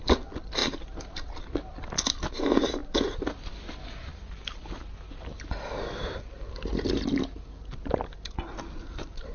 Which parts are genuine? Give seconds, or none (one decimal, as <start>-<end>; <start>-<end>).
0.0-9.3